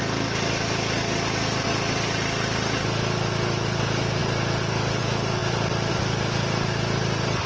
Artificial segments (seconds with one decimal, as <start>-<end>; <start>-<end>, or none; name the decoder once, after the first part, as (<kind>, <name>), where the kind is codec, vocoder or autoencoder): 5.4-5.9 (vocoder, BigVGAN v2)